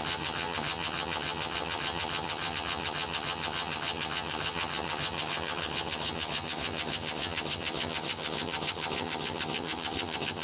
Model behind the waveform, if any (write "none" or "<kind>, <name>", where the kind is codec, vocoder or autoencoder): vocoder, HiFi-GAN